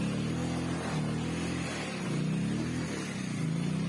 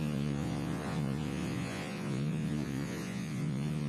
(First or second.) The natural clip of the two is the first